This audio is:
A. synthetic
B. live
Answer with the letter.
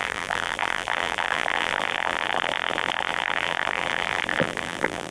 A